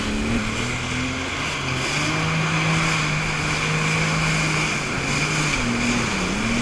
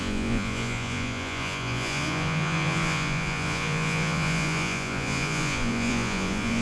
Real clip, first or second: first